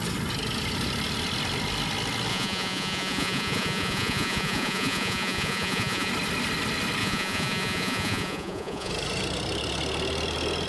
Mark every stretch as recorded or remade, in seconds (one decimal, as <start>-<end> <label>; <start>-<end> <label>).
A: 0.0-2.3 recorded; 2.3-6.1 remade; 6.1-7.0 recorded; 7.0-8.9 remade; 8.9-10.7 recorded